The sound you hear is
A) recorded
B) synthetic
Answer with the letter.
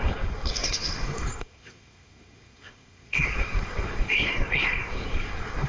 B